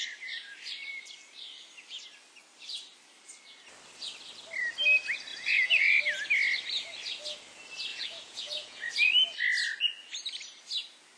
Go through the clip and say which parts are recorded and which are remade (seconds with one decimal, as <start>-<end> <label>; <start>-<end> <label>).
0.0-5.3 recorded; 5.3-6.0 remade; 6.0-7.9 recorded; 7.9-8.9 remade; 8.9-11.2 recorded